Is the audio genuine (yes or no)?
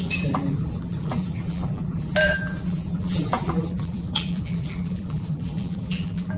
no